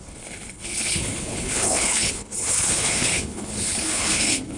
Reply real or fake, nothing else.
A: fake